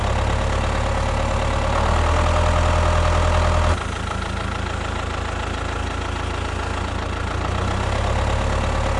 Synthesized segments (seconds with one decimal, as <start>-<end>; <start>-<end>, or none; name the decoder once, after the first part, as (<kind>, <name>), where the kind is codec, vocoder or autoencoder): none